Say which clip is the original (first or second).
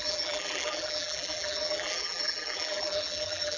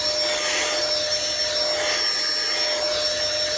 second